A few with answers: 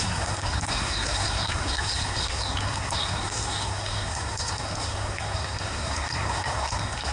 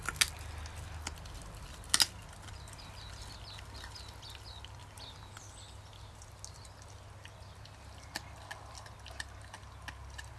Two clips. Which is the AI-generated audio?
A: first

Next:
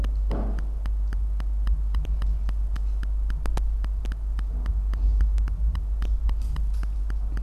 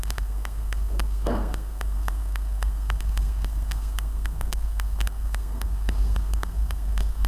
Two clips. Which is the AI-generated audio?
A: second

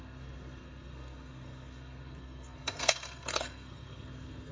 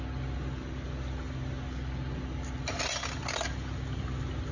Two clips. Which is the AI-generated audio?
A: first